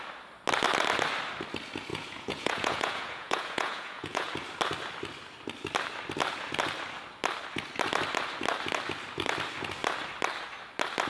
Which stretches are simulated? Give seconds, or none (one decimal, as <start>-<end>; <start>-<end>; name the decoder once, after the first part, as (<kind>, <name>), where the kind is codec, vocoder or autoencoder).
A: 1.9-4.3 (vocoder, Vocos)